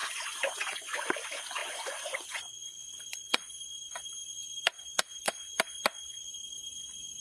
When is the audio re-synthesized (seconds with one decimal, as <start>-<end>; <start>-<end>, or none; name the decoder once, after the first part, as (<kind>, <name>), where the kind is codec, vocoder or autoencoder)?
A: 0.0-1.1 (vocoder, Vocos); 1.6-3.5

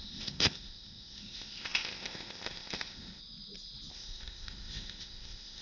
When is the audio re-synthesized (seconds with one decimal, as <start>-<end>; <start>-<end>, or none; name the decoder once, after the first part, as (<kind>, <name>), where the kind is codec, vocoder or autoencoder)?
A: 0.0-3.2 (codec, ZipCodec); 3.9-5.6

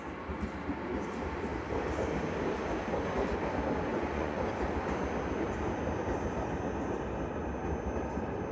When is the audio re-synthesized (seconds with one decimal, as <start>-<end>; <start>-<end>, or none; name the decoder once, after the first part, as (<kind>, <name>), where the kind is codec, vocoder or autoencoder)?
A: 3.9-4.4 (vocoder, Vocos)

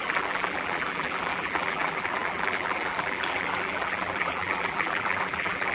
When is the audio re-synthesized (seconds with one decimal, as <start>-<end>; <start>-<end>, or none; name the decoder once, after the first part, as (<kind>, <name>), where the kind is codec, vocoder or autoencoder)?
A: 0.0-5.7 (vocoder, BigVGAN v2)

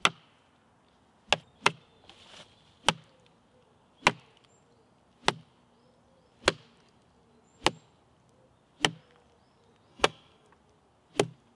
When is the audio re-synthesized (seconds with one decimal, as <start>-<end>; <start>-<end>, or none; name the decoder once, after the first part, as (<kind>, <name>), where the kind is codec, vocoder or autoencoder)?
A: 9.9-10.5 (codec, SNAC)

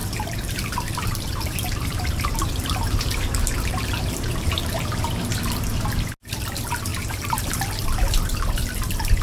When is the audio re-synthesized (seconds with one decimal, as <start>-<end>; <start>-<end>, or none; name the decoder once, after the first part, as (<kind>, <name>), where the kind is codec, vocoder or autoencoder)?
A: 0.0-5.1 (vocoder, BigVGAN v2); 6.9-7.5